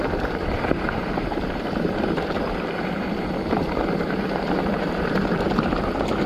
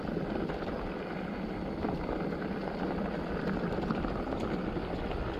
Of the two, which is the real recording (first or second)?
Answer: second